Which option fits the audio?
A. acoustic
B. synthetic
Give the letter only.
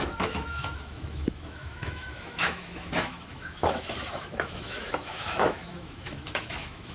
B